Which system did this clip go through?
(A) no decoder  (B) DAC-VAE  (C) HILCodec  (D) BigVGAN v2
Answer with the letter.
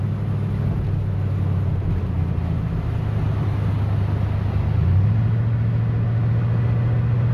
A